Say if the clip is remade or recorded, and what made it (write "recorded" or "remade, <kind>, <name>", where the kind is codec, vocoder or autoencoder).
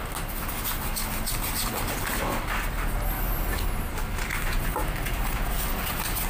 recorded